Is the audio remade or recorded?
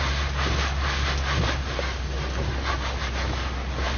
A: remade